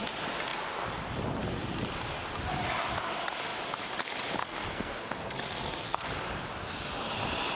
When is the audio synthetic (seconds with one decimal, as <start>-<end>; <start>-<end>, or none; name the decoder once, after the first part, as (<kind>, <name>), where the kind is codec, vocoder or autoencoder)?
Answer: 4.4-6.1 (codec, SNAC)